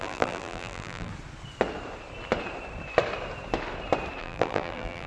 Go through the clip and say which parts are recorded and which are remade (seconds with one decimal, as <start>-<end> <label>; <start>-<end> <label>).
0.0-1.1 remade; 1.1-4.2 recorded; 4.2-5.1 remade

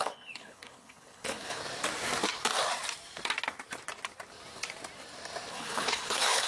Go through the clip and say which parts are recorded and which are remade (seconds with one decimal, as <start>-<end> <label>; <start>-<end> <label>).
0.0-1.6 remade; 1.6-5.5 recorded; 5.5-6.5 remade

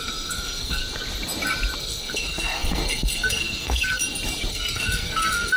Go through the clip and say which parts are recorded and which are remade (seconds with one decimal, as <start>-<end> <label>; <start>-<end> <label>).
0.0-0.8 remade; 0.8-1.8 recorded; 1.8-4.0 remade; 4.0-4.5 recorded; 4.5-5.6 remade

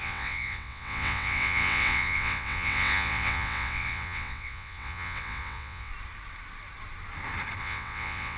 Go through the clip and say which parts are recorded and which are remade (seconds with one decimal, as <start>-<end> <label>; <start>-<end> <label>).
0.0-5.9 remade; 5.9-7.6 recorded; 7.6-8.4 remade

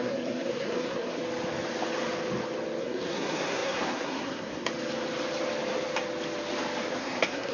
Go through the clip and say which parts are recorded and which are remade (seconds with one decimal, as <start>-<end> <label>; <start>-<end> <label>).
0.0-1.2 remade; 1.2-2.8 recorded; 2.8-4.7 remade; 4.7-7.0 recorded; 7.0-7.5 remade

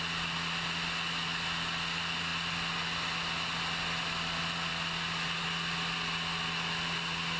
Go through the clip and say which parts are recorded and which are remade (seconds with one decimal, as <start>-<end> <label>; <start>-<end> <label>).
0.0-7.4 recorded

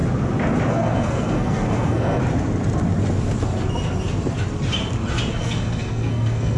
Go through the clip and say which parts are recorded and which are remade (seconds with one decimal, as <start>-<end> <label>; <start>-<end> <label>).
0.0-0.7 recorded; 0.7-2.2 remade; 2.2-5.3 recorded; 5.3-6.6 remade